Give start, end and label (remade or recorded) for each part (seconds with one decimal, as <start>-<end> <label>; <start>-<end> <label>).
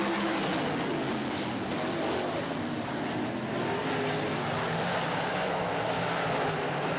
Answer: 0.0-7.0 recorded